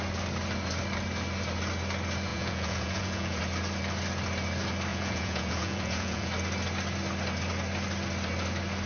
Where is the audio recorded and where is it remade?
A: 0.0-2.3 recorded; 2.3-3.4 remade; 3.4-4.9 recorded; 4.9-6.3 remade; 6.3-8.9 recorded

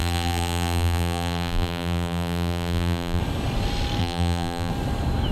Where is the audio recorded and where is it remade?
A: 0.0-3.2 remade; 3.2-4.0 recorded; 4.0-4.7 remade; 4.7-5.3 recorded